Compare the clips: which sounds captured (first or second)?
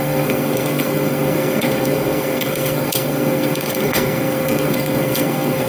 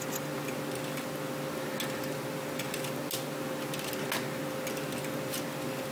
second